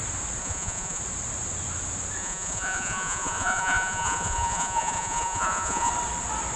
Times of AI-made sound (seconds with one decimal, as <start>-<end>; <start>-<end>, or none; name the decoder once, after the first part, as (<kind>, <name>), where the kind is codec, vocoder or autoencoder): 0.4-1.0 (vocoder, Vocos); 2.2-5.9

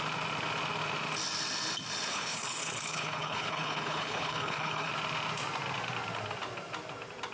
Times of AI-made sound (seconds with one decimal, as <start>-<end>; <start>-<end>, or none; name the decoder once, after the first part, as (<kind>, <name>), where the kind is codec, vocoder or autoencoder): 2.1-4.9 (codec, HILCodec)

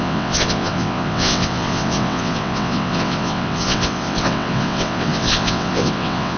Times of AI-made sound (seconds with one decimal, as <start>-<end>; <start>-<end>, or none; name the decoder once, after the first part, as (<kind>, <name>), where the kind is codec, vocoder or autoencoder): 0.0-6.4 (vocoder, WaveNeXt)

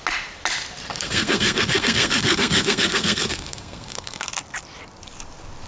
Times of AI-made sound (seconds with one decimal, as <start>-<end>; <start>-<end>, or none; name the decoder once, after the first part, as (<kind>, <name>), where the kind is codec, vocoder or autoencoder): 0.9-4.3 (codec, SNAC)

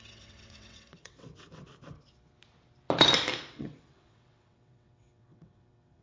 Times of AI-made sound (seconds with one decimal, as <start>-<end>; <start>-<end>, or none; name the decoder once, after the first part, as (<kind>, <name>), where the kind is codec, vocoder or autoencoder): 0.0-1.7 (vocoder, WaveNeXt); 3.5-6.0

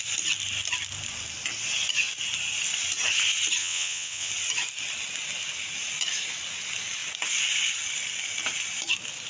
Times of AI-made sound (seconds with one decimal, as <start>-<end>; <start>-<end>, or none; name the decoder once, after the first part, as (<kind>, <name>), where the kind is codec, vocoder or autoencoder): 3.6-4.3 (vocoder, WaveNeXt)

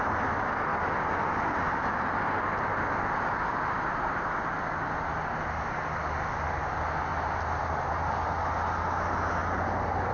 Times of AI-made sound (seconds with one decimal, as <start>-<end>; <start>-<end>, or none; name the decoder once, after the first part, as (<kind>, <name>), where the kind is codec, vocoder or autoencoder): none

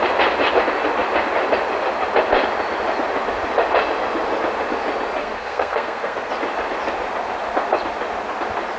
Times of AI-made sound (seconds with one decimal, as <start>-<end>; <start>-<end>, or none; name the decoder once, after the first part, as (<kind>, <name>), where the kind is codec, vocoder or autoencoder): 5.2-6.3 (codec, SNAC)